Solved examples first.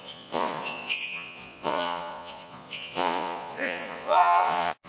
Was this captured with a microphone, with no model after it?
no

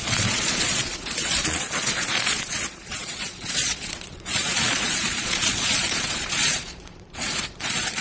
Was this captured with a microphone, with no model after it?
no